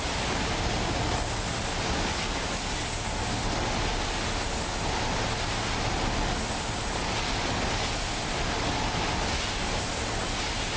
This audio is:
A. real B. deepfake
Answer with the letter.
A